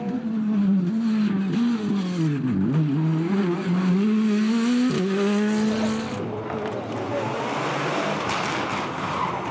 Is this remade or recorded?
recorded